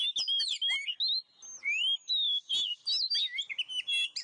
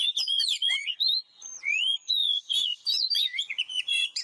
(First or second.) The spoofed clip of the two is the second